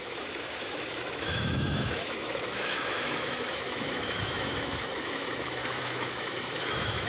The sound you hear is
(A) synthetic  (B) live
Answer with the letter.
A